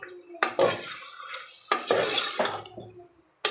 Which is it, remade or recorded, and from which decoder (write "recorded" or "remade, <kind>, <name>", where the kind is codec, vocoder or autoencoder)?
recorded